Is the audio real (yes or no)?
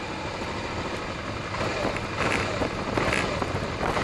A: yes